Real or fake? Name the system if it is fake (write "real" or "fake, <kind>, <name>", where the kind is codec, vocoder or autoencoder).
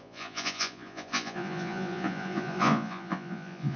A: fake, vocoder, Vocos